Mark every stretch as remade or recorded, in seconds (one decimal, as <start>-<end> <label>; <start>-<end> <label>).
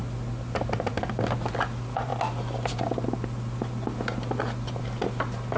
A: 0.0-5.6 recorded